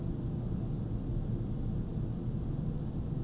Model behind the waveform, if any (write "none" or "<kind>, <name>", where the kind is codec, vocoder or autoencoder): none